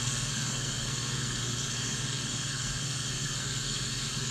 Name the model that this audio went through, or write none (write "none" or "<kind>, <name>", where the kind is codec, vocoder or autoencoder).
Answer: codec, SNAC